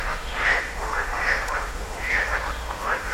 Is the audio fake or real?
fake